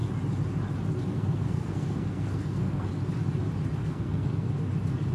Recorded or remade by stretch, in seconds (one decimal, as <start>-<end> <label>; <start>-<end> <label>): 0.0-1.1 recorded; 1.1-2.9 remade; 2.9-3.8 recorded; 3.8-4.5 remade; 4.5-5.1 recorded